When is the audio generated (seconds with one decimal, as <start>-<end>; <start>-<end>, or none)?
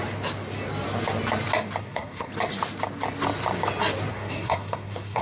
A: 1.8-2.3; 4.1-5.2